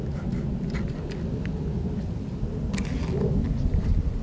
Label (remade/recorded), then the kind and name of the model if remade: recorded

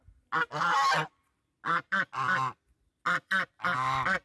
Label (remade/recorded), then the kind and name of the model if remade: recorded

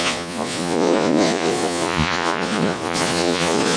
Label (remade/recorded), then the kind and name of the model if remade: remade, vocoder, Vocos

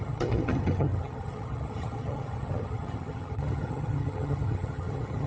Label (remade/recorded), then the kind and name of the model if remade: remade, vocoder, HiFi-GAN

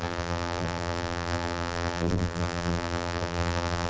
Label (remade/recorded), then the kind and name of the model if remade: remade, vocoder, BigVGAN v2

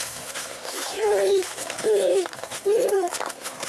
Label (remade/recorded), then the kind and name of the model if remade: remade, codec, SNAC